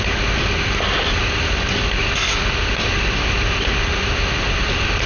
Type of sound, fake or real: real